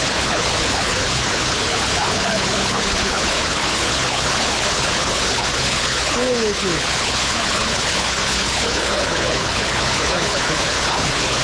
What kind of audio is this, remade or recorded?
remade